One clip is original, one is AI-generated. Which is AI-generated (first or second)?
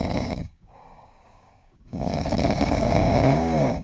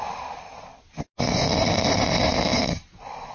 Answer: first